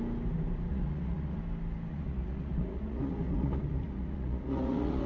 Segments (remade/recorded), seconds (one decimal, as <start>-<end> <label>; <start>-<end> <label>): 0.0-0.7 recorded; 0.7-1.4 remade; 1.4-1.9 recorded; 1.9-5.1 remade